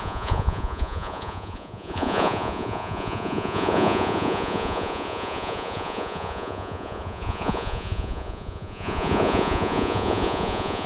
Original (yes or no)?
no